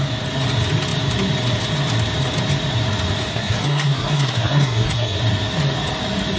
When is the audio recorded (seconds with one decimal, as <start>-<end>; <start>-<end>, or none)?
0.0-3.3; 5.2-6.4

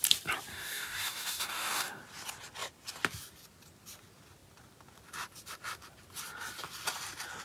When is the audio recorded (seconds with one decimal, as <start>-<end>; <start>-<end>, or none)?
0.0-0.5; 2.0-7.4

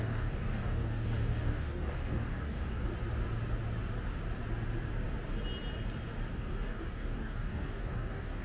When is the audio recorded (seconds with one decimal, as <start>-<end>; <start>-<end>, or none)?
2.9-6.3

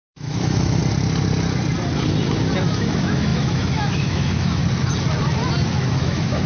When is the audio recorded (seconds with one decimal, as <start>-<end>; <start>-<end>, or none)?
0.8-2.6; 4.6-5.7

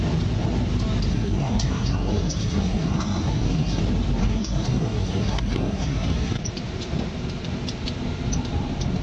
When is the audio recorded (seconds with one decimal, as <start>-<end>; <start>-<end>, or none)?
0.0-1.1; 3.8-4.2; 6.4-9.0

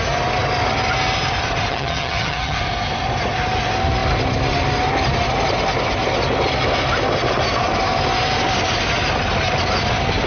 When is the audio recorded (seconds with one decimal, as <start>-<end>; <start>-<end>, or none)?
0.0-1.7; 2.6-10.3

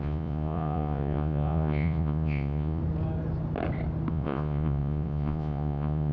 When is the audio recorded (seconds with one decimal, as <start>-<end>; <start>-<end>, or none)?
2.8-4.1